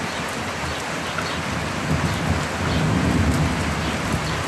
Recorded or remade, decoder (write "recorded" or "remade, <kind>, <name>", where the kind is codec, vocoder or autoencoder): recorded